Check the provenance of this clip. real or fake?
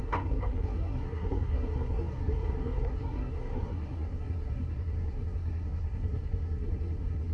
fake